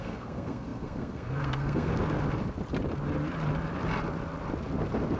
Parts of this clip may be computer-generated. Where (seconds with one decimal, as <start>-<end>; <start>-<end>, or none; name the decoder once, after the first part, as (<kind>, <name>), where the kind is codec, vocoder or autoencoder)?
0.0-1.9 (codec, SNAC)